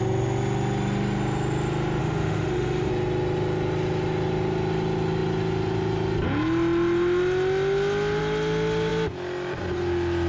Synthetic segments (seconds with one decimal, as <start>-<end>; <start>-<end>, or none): 2.0-2.9